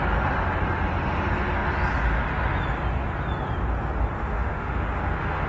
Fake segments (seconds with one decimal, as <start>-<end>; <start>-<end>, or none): 4.2-5.5